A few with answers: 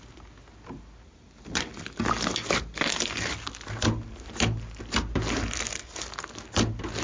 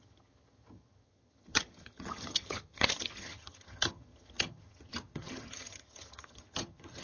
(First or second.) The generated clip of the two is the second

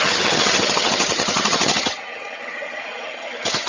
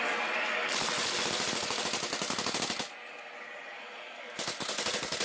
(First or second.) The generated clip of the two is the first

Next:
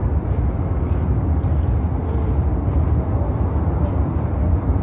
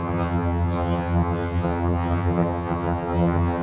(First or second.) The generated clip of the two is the second